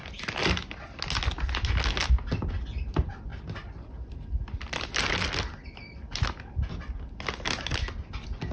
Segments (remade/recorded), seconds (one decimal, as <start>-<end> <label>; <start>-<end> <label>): 0.0-8.5 recorded